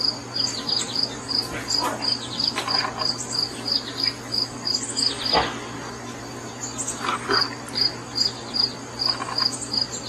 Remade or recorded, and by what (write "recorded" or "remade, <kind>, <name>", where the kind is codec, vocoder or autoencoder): recorded